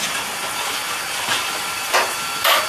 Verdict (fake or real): real